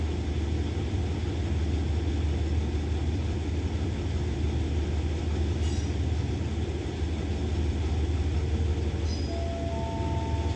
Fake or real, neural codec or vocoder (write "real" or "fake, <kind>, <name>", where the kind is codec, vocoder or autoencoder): real